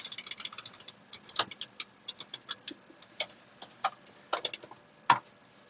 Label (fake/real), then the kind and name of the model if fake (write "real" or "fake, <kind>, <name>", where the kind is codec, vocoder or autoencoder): real